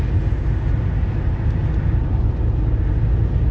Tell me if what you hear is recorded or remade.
recorded